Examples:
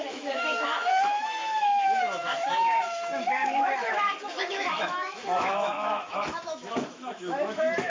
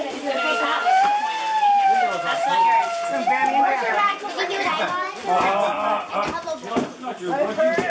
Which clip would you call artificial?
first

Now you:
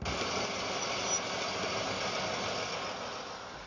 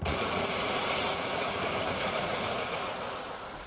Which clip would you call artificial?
second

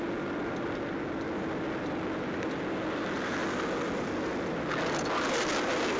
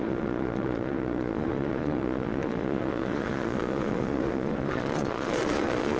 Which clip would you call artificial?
second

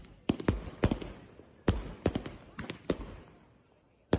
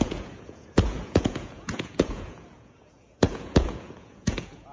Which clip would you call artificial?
second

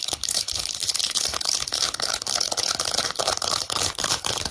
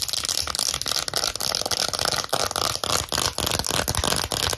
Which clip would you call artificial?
first